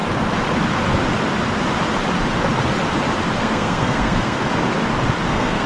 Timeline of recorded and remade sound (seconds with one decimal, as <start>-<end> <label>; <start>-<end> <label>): 0.0-3.4 recorded; 3.4-4.4 remade; 4.4-5.3 recorded; 5.3-5.7 remade